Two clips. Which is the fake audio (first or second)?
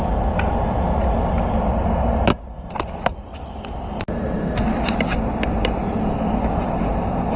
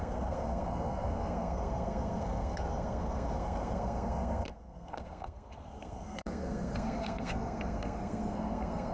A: second